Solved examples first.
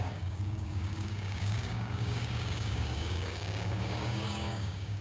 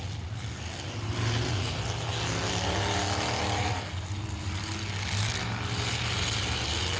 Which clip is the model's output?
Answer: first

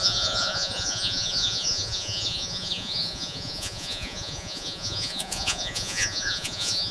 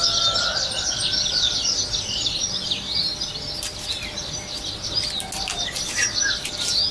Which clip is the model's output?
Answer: first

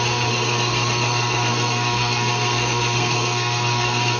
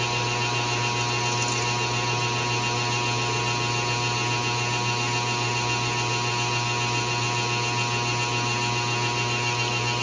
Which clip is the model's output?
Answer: first